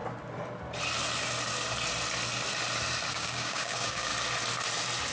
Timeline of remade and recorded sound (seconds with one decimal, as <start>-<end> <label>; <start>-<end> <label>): 0.0-3.1 recorded; 3.1-4.1 remade; 4.1-5.1 recorded